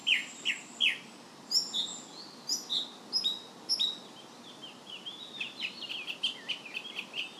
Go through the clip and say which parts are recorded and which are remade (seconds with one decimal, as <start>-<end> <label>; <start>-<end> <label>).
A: 0.0-0.5 remade; 0.5-4.6 recorded; 4.6-5.9 remade; 5.9-7.4 recorded